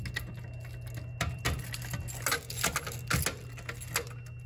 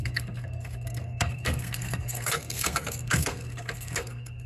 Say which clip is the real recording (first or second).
first